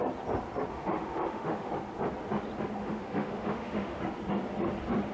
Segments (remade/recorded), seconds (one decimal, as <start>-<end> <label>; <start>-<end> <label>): 0.0-0.7 recorded; 0.7-1.7 remade; 1.7-2.8 recorded; 2.8-4.0 remade; 4.0-5.1 recorded